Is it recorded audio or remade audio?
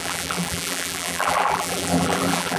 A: remade